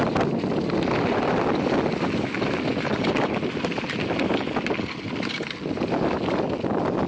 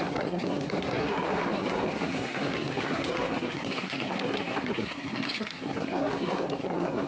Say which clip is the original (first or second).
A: first